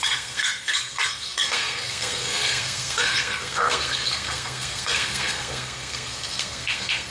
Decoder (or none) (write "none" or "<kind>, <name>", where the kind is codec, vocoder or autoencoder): codec, SNAC